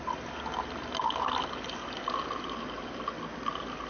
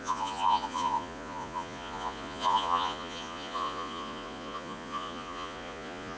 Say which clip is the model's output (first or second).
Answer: second